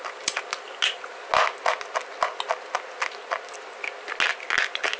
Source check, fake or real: real